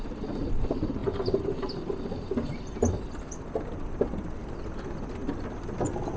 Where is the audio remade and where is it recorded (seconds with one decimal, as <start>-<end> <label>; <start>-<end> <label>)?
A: 0.0-6.2 recorded